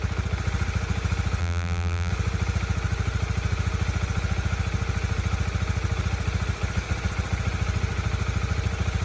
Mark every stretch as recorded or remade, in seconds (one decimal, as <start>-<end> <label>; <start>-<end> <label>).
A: 0.0-1.4 recorded; 1.4-2.1 remade; 2.1-9.0 recorded